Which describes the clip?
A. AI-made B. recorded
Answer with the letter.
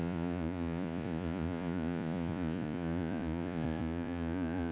A